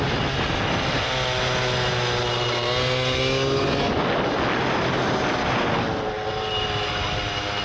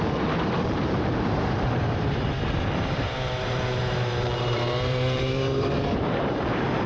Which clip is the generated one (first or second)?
second